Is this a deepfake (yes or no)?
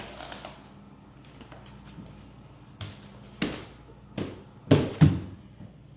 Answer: no